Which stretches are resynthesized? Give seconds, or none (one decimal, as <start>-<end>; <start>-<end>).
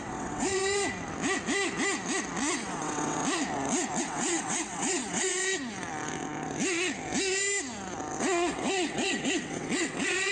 0.0-0.6; 2.5-3.2; 4.0-5.4; 8.2-10.3